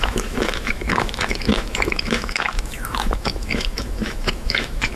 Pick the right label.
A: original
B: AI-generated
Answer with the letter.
B